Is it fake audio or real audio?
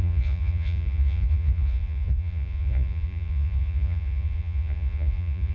fake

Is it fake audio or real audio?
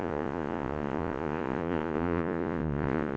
fake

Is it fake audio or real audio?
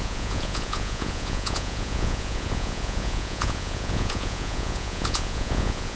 fake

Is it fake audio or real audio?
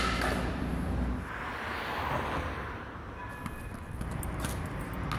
real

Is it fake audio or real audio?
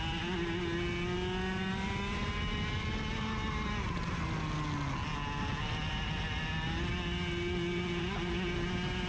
real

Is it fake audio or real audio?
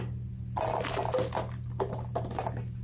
real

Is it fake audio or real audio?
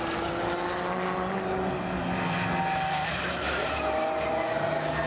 real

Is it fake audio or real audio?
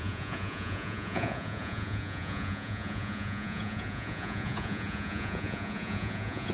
fake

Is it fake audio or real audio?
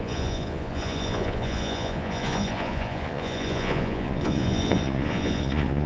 fake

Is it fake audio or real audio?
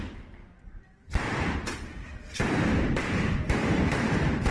real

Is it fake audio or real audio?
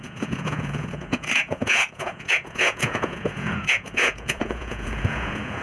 fake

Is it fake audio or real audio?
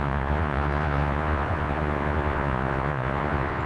fake